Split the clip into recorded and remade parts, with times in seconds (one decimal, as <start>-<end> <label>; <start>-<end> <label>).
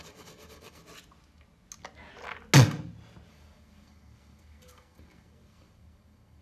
0.0-0.8 remade; 0.8-3.3 recorded; 3.3-6.4 remade